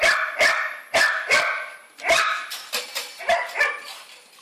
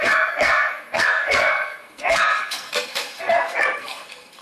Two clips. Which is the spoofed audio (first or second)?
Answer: second